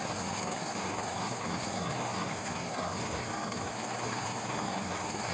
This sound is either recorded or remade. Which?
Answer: remade